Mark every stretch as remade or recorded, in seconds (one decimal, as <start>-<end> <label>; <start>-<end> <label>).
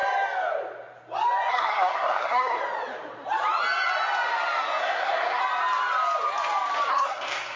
0.0-1.5 recorded; 1.5-2.6 remade; 2.6-4.8 recorded; 4.8-5.4 remade; 5.4-6.9 recorded; 6.9-7.6 remade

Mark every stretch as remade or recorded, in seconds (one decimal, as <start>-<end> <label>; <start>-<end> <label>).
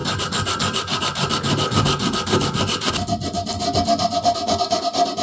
0.0-5.2 recorded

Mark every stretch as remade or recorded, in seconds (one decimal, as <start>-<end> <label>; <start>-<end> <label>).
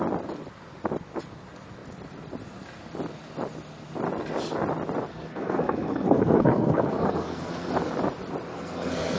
0.0-5.1 recorded; 5.1-7.7 remade; 7.7-8.5 recorded; 8.5-9.2 remade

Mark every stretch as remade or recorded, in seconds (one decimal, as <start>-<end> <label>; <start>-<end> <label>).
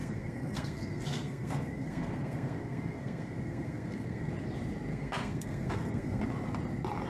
0.0-4.3 remade; 4.3-4.9 recorded; 4.9-6.2 remade; 6.2-7.1 recorded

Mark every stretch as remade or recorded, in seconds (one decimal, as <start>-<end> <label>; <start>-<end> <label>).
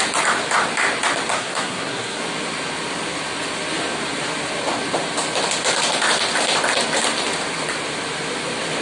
0.0-1.3 recorded; 1.3-2.2 remade; 2.2-8.8 recorded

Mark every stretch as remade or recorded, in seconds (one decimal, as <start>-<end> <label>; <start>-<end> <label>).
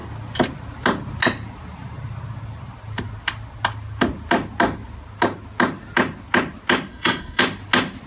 0.0-6.9 recorded; 6.9-7.4 remade; 7.4-8.1 recorded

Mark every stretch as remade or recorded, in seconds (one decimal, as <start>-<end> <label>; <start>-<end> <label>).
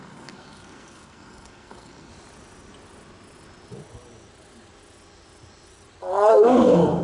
0.0-2.1 remade; 2.1-6.3 recorded; 6.3-7.0 remade